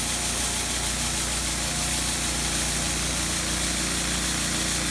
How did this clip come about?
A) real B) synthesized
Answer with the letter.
A